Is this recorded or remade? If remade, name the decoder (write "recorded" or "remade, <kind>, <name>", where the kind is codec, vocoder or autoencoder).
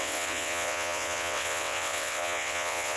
remade, vocoder, WaveNeXt